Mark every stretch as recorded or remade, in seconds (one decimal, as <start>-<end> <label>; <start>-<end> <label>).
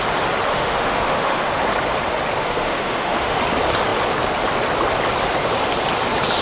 0.0-0.5 recorded; 0.5-1.5 remade; 1.5-2.4 recorded; 2.4-3.4 remade; 3.4-6.4 recorded